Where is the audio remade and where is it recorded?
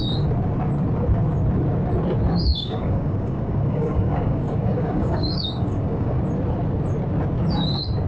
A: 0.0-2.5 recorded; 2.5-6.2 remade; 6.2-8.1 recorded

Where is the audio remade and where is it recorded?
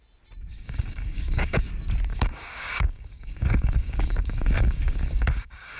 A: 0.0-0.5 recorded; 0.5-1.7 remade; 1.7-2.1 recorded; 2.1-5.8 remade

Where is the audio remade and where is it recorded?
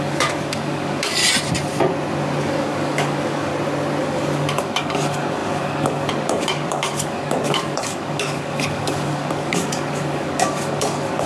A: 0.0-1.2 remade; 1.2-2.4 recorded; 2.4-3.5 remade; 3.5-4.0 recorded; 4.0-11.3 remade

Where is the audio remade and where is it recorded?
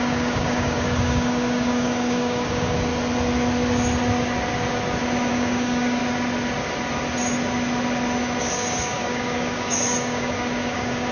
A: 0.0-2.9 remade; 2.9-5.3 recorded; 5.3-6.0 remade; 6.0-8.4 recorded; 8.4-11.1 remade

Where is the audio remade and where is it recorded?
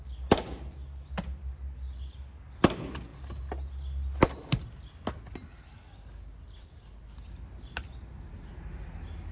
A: 0.0-9.3 recorded